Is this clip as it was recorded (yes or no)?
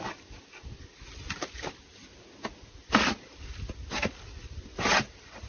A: yes